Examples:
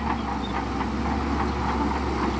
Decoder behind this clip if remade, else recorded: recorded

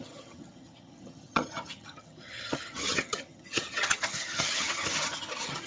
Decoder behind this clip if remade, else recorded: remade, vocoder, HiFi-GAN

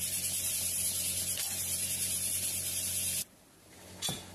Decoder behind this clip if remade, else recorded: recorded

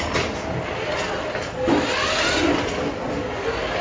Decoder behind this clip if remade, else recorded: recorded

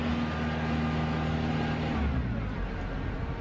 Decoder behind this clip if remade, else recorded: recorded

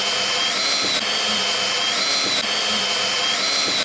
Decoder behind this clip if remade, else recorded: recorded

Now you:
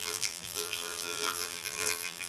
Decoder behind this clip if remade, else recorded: remade, vocoder, BigVGAN v2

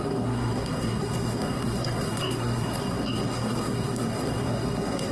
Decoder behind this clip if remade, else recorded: remade, codec, SNAC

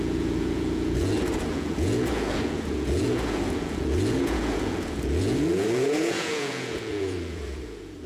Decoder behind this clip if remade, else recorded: remade, vocoder, Vocos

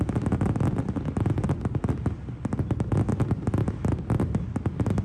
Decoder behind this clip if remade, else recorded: recorded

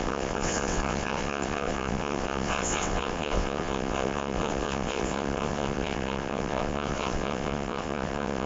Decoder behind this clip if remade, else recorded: remade, vocoder, WaveNeXt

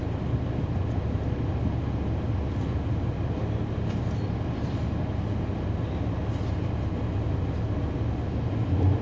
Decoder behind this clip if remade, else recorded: recorded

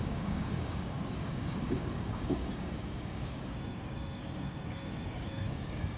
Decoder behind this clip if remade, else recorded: remade, codec, DAC